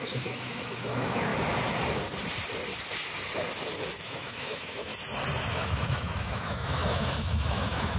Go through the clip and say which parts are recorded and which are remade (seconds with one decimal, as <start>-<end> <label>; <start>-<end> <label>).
0.0-1.3 remade; 1.3-4.0 recorded; 4.0-4.9 remade; 4.9-5.5 recorded; 5.5-8.0 remade